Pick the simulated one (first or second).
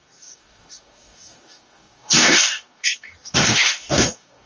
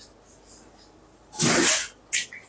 first